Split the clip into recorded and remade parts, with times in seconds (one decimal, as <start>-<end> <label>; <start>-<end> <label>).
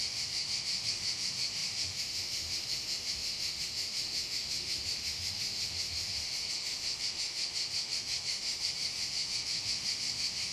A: 0.0-10.5 remade